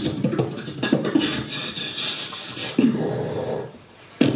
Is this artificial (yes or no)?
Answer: no